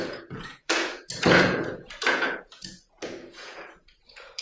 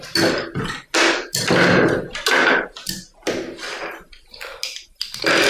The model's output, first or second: first